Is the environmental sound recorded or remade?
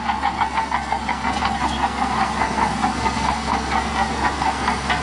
remade